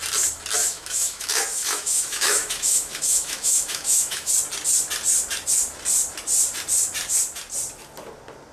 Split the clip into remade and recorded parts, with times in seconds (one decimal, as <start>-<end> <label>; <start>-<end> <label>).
0.0-0.6 recorded; 0.6-4.3 remade; 4.3-8.5 recorded